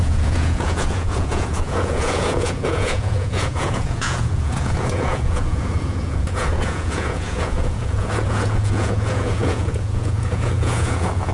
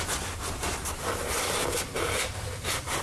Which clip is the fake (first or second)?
first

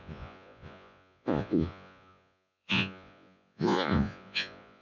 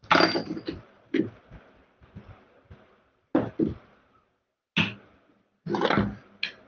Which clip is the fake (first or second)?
first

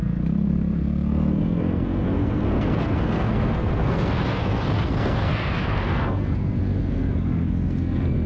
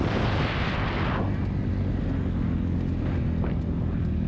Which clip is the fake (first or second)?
first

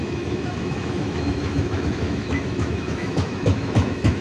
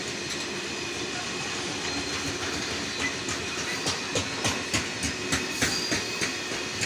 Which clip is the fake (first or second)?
first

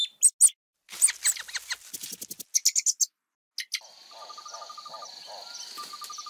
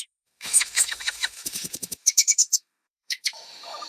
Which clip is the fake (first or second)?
second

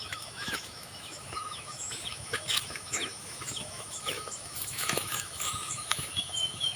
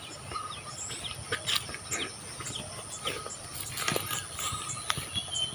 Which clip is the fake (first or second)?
first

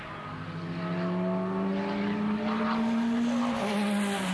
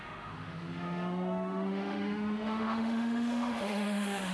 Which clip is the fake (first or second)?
second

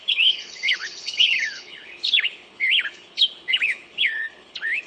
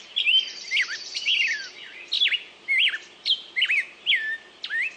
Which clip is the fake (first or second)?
first